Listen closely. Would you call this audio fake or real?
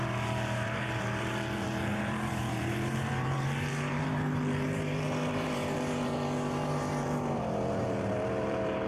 fake